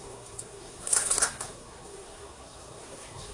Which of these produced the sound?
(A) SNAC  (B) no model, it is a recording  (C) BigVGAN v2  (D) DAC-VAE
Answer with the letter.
A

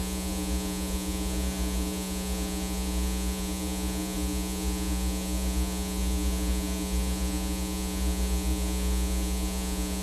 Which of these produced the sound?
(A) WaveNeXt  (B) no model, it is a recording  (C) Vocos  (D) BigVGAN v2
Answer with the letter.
C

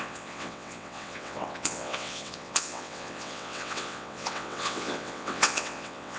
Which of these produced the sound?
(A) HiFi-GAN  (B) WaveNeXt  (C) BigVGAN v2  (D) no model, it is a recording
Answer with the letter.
B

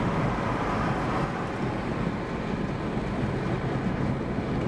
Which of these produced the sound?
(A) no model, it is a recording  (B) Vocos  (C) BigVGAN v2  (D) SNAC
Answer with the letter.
A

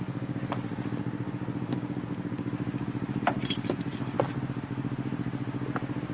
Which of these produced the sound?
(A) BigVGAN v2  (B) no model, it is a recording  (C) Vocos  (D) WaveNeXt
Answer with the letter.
B